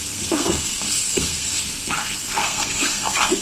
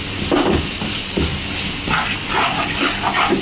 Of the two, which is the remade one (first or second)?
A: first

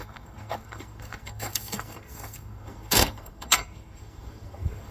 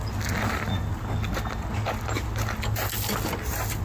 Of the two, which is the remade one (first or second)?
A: first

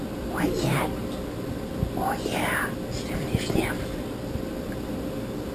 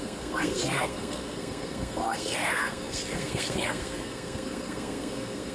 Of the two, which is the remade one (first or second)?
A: second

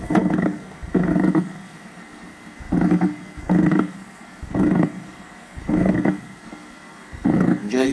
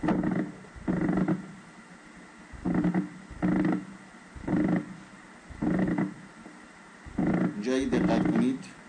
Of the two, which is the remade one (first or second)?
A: first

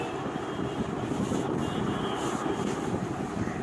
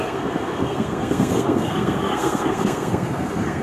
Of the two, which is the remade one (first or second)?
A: second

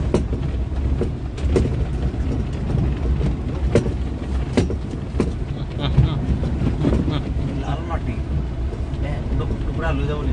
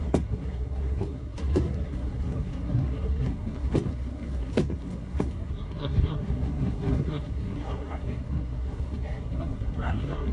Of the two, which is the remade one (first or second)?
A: second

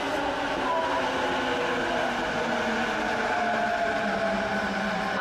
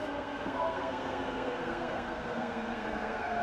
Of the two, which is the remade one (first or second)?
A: second